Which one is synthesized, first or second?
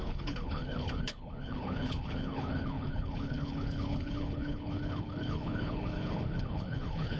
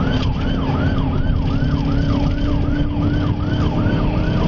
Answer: first